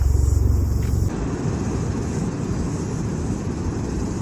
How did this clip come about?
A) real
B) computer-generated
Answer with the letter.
A